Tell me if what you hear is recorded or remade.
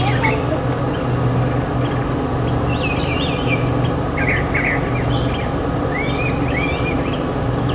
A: recorded